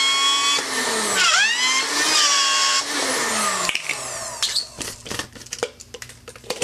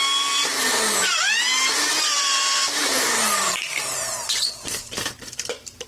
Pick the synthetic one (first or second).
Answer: second